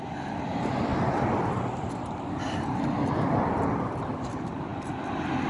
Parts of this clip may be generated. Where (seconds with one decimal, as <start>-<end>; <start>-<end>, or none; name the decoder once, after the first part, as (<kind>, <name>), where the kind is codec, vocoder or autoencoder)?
none